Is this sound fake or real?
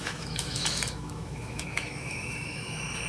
fake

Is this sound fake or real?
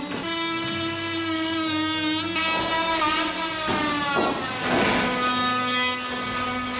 real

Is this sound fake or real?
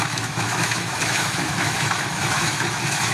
fake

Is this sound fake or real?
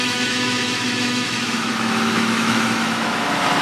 fake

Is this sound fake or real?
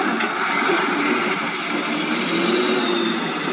real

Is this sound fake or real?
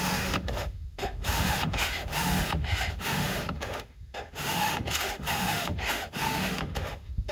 fake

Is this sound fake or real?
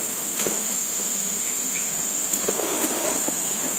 fake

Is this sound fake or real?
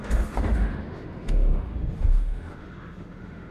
fake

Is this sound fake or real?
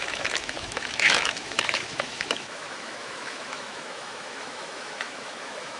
fake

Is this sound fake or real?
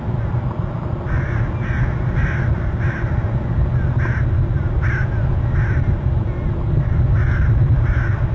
real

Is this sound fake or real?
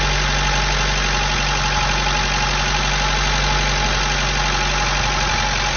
real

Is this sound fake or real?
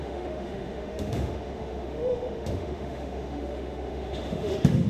fake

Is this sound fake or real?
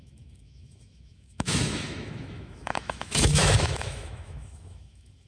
fake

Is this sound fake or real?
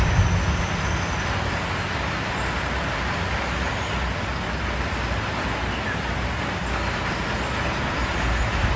real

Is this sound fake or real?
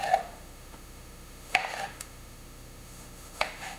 fake